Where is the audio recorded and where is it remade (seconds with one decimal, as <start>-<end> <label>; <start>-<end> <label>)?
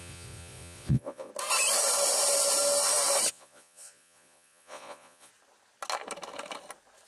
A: 0.0-1.3 remade; 1.3-3.3 recorded; 3.3-5.3 remade; 5.3-7.1 recorded